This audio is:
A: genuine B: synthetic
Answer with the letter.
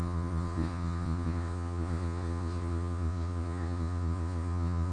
B